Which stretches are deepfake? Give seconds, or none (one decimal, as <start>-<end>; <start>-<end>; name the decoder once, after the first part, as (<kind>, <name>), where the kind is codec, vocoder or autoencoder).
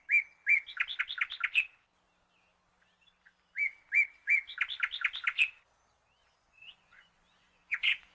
6.2-8.1 (vocoder, Vocos)